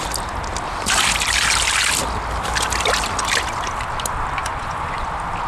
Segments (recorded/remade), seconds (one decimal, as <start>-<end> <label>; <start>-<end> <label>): 0.0-4.4 recorded; 4.4-5.1 remade; 5.1-5.5 recorded